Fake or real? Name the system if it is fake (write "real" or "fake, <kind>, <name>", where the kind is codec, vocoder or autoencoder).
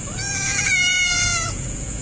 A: fake, vocoder, Vocos